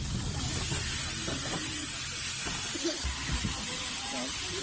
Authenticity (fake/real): real